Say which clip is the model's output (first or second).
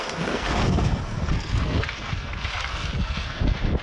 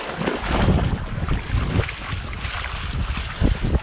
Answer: first